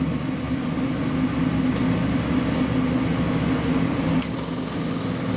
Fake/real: real